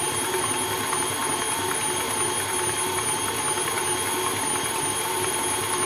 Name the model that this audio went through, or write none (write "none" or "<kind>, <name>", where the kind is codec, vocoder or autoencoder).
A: none